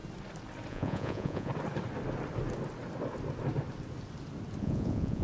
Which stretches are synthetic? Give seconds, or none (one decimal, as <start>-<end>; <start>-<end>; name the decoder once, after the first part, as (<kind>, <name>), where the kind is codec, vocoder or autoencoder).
0.7-1.5 (vocoder, Vocos); 4.6-5.2